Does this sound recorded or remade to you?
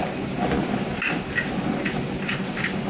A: recorded